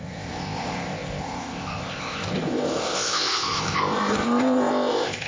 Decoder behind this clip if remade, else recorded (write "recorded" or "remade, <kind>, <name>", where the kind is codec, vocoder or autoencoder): remade, codec, ZipCodec